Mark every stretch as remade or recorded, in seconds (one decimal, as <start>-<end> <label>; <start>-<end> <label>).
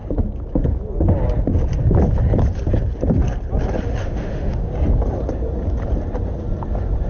0.0-4.0 recorded; 4.0-4.7 remade; 4.7-7.1 recorded